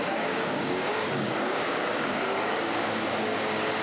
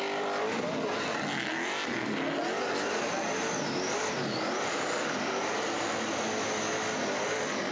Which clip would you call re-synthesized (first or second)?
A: first